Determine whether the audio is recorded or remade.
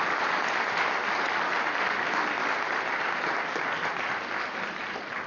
recorded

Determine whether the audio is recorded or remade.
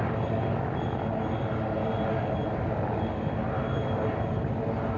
recorded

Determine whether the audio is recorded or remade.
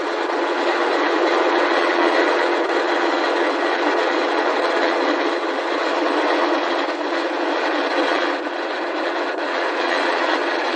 remade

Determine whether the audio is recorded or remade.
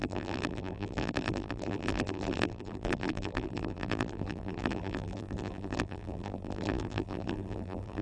remade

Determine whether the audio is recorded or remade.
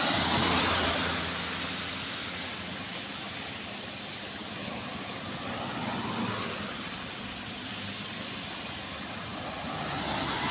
recorded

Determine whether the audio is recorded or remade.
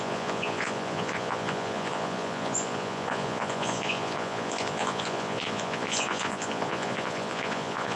remade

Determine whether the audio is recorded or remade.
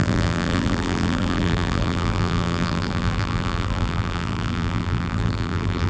remade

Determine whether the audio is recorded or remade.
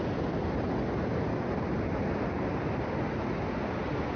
recorded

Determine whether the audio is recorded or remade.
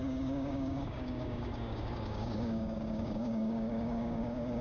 remade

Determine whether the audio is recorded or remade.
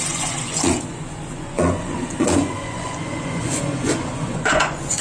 remade